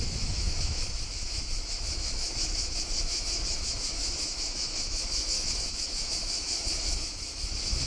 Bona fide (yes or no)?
no